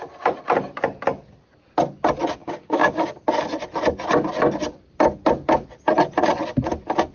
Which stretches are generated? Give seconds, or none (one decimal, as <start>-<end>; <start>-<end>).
2.4-3.1